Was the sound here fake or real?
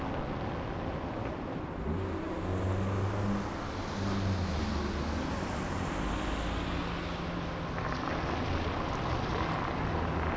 real